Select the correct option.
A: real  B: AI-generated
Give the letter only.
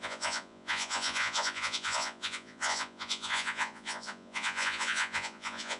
B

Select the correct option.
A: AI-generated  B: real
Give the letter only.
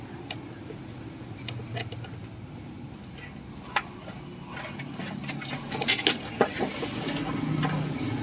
B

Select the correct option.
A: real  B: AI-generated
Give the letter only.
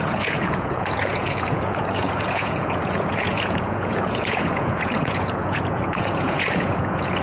B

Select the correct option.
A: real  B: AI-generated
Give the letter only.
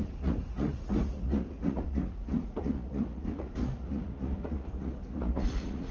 B